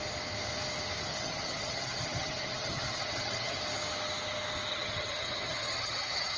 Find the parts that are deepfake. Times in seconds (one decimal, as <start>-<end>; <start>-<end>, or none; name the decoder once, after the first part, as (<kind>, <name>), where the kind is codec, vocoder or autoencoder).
1.1-3.6 (vocoder, HiFi-GAN); 4.7-6.4